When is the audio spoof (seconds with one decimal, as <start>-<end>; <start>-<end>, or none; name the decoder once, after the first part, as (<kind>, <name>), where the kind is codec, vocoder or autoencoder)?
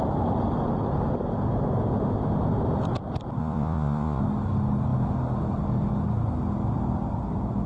3.4-4.2 (vocoder, Vocos)